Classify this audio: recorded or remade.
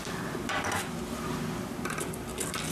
remade